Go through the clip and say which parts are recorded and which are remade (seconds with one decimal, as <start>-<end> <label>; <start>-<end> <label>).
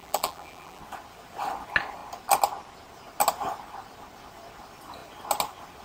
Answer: 0.0-0.8 remade; 0.8-5.8 recorded